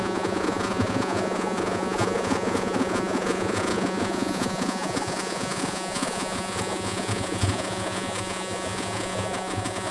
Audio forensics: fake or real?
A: fake